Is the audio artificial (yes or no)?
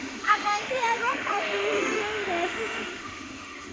yes